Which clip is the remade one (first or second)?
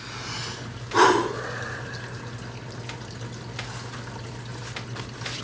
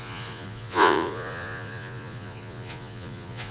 second